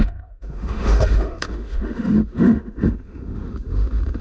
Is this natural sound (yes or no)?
no